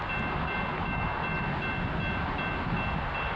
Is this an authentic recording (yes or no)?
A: yes